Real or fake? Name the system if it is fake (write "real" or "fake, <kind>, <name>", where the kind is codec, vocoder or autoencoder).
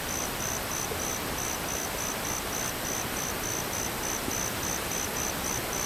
real